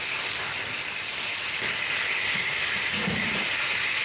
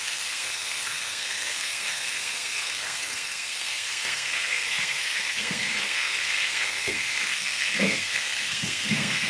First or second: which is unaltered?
first